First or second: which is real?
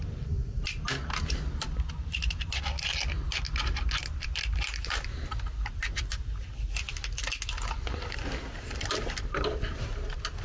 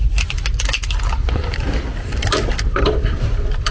first